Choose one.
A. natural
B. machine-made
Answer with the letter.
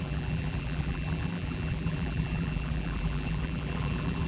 B